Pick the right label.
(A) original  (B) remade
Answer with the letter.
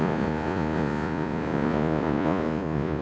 B